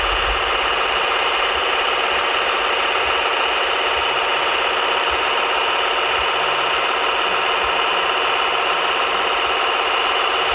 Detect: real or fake real